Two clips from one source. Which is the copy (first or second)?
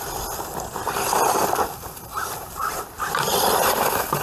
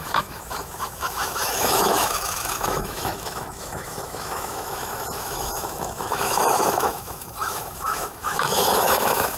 second